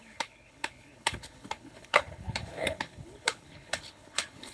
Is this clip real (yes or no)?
no